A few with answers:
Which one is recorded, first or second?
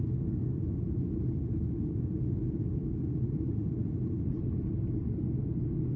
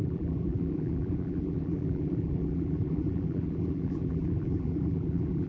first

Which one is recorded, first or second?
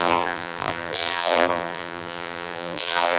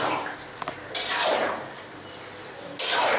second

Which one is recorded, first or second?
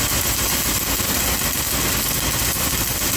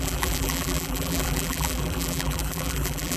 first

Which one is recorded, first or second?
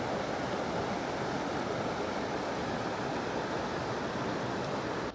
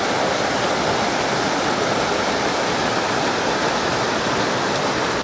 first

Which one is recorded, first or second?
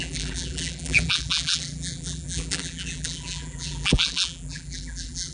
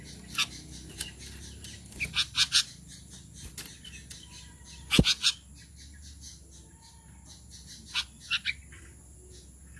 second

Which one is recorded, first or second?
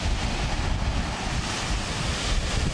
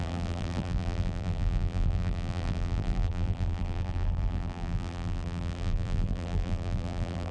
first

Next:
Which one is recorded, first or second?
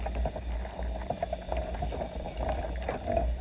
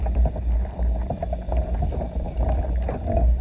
first